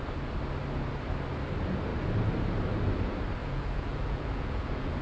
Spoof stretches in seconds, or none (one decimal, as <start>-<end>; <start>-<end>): 3.4-5.0